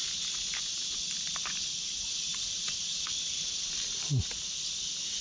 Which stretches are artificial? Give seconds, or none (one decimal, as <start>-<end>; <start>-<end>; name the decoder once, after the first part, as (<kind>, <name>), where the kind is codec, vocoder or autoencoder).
none